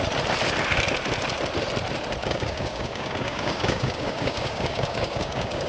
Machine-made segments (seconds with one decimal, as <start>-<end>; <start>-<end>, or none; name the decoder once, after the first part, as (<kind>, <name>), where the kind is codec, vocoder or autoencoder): 2.2-5.7 (codec, DAC)